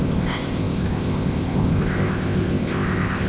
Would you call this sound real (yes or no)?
no